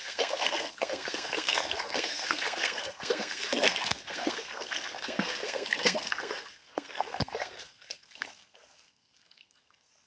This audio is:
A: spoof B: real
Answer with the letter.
A